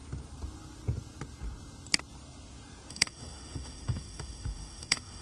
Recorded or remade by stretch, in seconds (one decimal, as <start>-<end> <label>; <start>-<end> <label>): 0.0-2.9 recorded; 2.9-5.2 remade